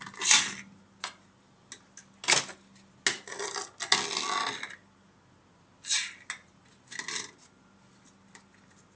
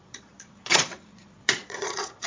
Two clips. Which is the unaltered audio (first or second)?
first